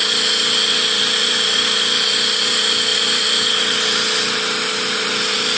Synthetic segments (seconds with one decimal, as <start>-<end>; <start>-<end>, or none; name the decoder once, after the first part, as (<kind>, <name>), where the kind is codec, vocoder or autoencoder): none